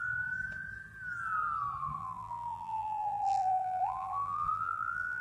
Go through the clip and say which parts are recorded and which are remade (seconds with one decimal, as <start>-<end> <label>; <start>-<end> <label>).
0.0-2.0 recorded; 2.0-5.2 remade